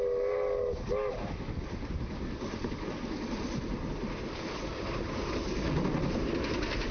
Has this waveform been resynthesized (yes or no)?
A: no